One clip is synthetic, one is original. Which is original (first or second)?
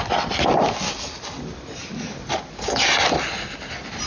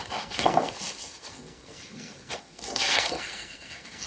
first